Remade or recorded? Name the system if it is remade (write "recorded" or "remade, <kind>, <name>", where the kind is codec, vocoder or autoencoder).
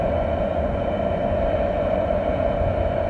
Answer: remade, vocoder, Vocos